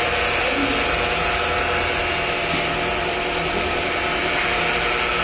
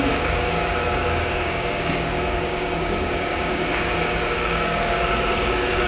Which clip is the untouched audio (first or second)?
first